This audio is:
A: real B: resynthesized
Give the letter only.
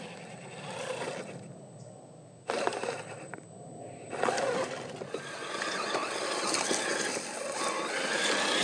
A